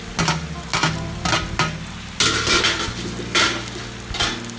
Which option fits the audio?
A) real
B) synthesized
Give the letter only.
A